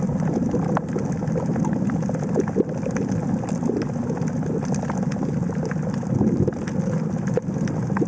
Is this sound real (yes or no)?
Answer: yes